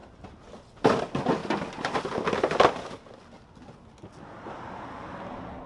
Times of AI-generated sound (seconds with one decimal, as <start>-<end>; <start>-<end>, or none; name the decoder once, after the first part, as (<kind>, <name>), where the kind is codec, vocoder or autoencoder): none

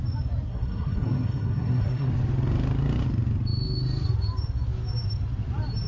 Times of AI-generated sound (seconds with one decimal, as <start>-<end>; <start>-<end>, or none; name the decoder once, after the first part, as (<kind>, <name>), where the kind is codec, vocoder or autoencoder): 0.5-2.1 (codec, SNAC)

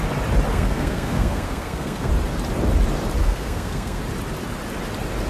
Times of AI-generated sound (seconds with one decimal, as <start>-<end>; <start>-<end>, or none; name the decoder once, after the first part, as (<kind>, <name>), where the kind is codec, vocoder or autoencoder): 0.5-2.1 (codec, SNAC); 3.2-4.0

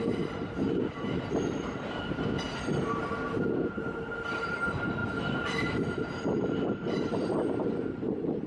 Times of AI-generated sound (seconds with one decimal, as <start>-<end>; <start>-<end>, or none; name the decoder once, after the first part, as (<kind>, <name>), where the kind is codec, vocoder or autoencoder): none

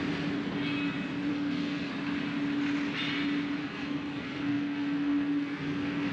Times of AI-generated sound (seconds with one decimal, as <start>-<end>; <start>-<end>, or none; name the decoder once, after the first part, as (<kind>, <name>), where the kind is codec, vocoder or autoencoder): 1.3-1.9 (codec, SNAC); 3.6-6.1

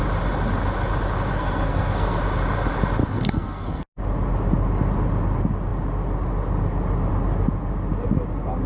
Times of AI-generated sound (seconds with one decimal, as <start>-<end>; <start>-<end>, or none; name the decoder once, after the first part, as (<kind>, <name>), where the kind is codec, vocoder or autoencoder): 1.3-2.2 (codec, SNAC); 3.0-3.8

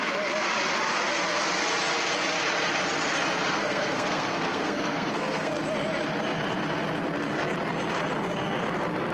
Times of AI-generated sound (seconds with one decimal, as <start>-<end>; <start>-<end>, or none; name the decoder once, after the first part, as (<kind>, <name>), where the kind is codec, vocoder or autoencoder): 3.5-5.5 (codec, SNAC)